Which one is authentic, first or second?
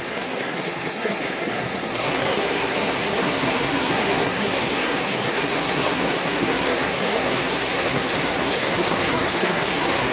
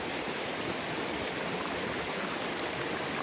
second